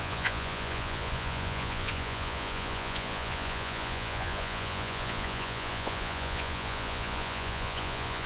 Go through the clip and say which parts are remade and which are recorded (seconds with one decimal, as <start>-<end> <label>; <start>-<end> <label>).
0.0-8.3 remade